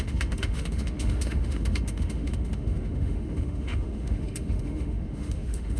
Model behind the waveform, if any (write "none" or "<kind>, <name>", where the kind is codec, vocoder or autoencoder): autoencoder, DAC-VAE